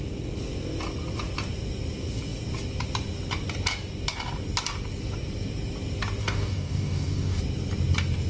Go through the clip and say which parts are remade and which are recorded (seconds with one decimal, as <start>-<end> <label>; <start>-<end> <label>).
0.0-6.2 recorded; 6.2-7.4 remade; 7.4-8.3 recorded